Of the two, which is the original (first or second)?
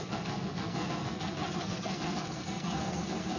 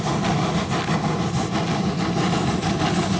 second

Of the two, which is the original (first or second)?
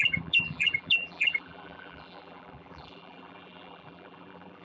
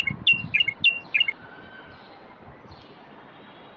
second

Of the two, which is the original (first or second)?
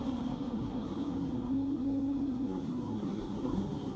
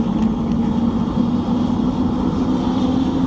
second